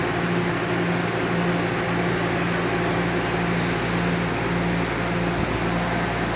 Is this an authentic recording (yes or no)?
yes